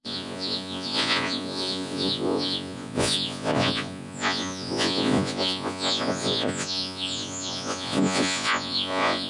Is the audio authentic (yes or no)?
no